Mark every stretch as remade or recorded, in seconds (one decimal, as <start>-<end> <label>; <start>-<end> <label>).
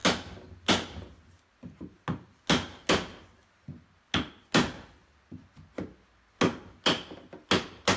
0.0-8.0 recorded